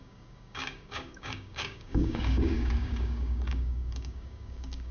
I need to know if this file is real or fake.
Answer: fake